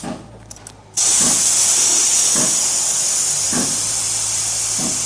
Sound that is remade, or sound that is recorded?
recorded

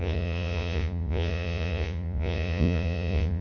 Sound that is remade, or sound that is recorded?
remade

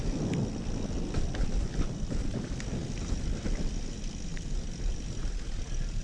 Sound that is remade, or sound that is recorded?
recorded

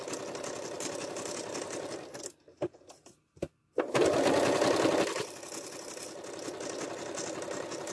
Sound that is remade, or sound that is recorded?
recorded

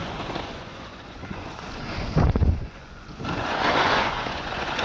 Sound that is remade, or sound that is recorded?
remade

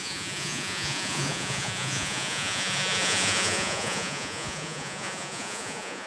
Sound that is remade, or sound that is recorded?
remade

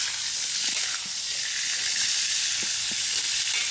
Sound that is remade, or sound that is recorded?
recorded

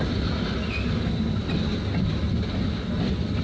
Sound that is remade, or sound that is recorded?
recorded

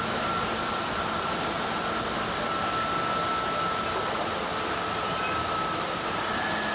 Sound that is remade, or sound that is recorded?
recorded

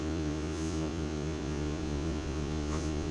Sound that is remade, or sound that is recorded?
remade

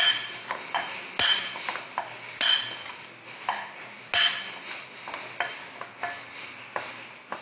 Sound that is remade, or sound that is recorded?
recorded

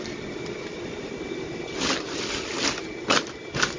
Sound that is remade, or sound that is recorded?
recorded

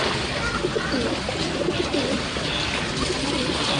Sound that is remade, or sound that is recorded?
recorded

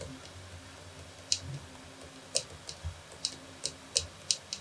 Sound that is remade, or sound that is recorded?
recorded